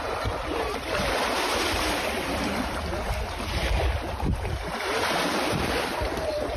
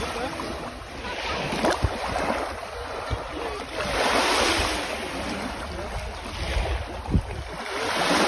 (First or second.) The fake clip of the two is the first